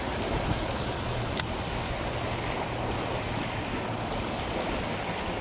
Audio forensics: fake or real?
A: real